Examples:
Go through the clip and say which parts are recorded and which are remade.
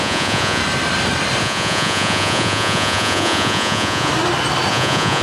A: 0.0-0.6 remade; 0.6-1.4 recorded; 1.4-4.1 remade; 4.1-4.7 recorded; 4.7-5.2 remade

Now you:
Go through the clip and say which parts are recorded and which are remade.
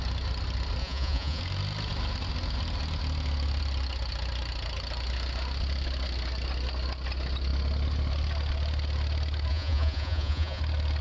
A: 0.0-0.8 recorded; 0.8-1.4 remade; 1.4-9.5 recorded; 9.5-10.6 remade; 10.6-11.0 recorded